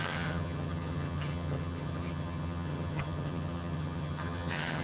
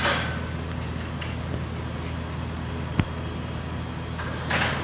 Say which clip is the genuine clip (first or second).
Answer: second